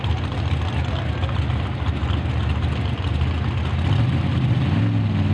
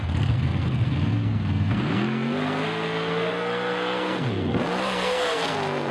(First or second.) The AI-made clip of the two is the second